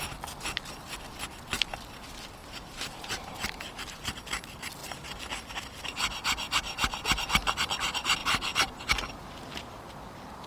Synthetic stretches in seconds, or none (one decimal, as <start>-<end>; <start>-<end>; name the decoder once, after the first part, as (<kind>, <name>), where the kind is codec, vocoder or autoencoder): 2.4-4.2 (vocoder, BigVGAN v2); 8.2-8.8